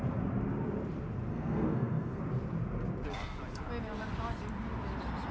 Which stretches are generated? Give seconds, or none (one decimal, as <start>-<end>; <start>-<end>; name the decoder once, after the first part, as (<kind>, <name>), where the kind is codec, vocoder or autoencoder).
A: 1.3-2.2 (codec, SNAC)